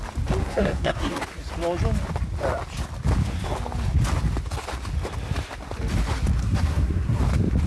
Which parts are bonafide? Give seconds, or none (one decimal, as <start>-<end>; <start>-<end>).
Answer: 0.0-0.4; 1.2-6.4; 7.2-7.7